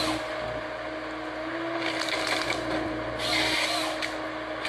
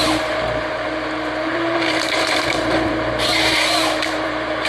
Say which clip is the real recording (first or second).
first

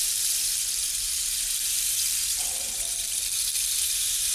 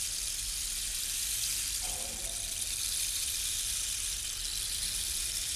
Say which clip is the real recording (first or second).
second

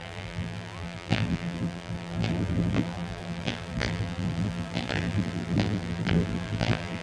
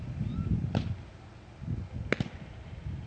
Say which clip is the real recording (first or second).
second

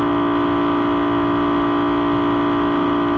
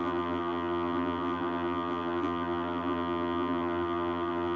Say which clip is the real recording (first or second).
first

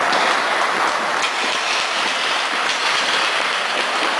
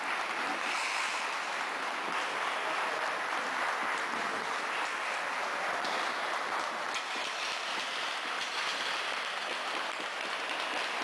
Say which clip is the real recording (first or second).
first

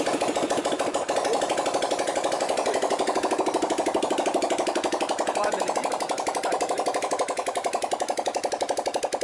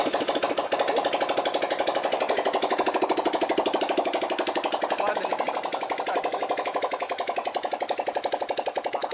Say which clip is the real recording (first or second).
second